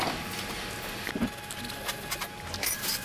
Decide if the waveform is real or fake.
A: real